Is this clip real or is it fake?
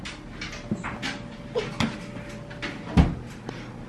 real